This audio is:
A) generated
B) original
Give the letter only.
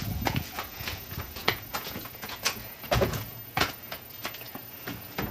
A